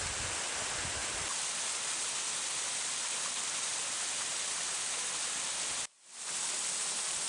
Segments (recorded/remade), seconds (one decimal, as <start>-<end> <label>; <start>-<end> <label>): 0.0-7.3 recorded

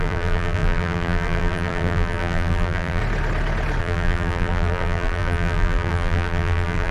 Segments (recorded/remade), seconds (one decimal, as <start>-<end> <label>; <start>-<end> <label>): 0.0-3.0 remade; 3.0-3.8 recorded; 3.8-6.9 remade

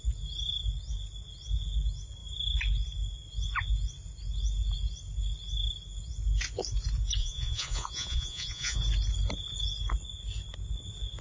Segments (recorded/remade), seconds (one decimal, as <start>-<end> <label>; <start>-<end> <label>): 0.0-7.2 recorded; 7.2-8.8 remade; 8.8-11.2 recorded

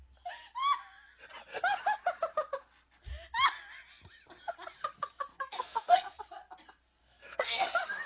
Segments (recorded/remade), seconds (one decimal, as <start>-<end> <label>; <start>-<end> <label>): 0.0-5.3 recorded; 5.3-6.2 remade; 6.2-7.0 recorded; 7.0-7.6 remade; 7.6-8.1 recorded

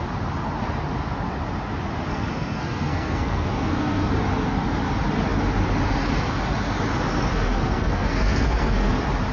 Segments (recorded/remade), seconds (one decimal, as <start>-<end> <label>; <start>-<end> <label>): 0.0-2.1 recorded; 2.1-4.1 remade; 4.1-7.3 recorded; 7.3-8.9 remade; 8.9-9.3 recorded

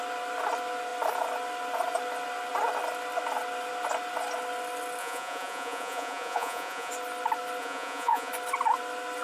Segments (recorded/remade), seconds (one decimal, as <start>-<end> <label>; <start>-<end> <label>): 0.0-5.0 recorded; 5.0-6.9 remade; 6.9-7.6 recorded; 7.6-8.3 remade; 8.3-9.2 recorded

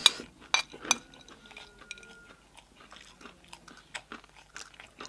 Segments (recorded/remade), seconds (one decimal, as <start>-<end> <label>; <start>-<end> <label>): 0.0-5.1 recorded